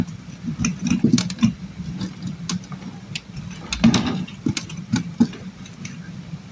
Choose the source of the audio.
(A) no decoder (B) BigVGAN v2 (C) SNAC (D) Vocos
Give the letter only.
A